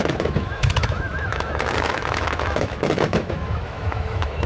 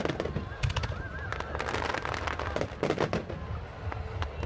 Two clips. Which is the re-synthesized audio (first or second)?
first